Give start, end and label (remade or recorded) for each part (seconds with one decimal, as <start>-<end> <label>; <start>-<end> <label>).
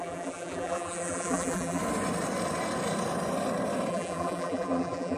0.0-1.8 remade; 1.8-3.9 recorded; 3.9-5.2 remade